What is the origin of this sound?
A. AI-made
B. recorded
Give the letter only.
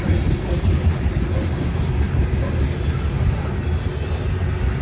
B